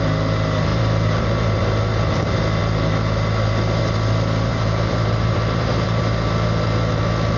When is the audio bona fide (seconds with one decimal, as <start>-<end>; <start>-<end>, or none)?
0.0-0.7; 1.6-4.5; 6.0-7.4